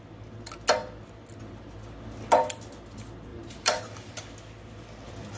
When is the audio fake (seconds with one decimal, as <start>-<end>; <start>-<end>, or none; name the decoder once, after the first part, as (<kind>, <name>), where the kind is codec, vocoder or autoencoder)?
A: 3.3-4.3 (vocoder, BigVGAN v2)